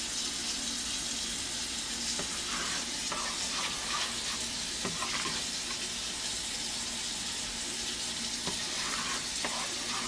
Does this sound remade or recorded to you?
recorded